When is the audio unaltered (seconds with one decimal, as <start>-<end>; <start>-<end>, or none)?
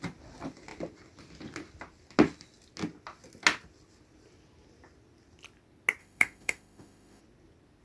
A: 0.0-6.0; 7.2-7.8